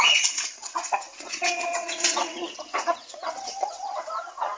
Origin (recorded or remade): remade